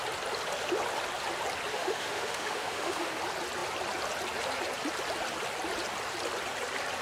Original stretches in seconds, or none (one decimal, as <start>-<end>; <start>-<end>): 0.0-1.7; 3.2-7.0